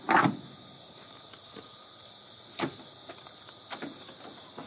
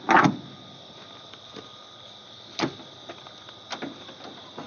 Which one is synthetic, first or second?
first